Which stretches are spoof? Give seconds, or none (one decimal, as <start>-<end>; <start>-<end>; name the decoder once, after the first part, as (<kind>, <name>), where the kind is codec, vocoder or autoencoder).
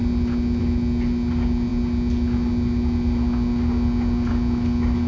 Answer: none